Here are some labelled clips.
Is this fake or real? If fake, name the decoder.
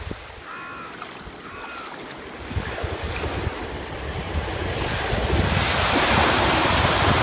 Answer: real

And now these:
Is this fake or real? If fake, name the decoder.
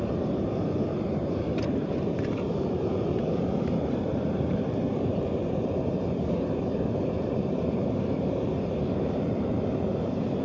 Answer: fake, vocoder, BigVGAN v2